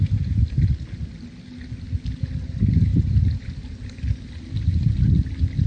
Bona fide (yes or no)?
yes